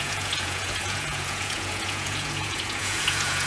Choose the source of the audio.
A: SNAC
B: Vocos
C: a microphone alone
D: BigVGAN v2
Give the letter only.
B